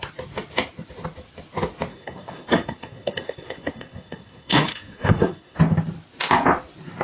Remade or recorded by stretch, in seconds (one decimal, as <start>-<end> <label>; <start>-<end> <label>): 0.0-1.9 recorded; 1.9-5.6 remade; 5.6-7.0 recorded